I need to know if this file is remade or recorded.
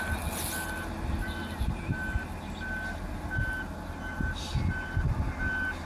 recorded